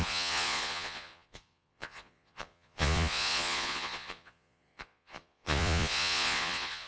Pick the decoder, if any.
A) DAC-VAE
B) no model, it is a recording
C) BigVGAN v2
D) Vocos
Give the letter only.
D